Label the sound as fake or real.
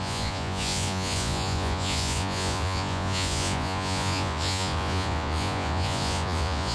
fake